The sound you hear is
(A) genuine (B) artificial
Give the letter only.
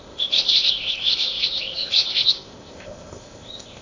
B